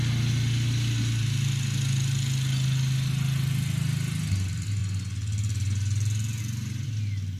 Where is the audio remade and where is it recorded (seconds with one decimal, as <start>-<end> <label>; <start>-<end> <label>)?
0.0-7.4 recorded